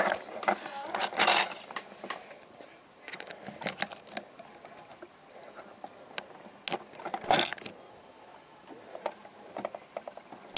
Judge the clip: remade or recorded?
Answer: recorded